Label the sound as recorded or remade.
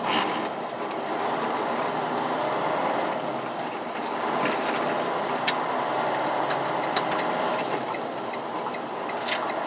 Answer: recorded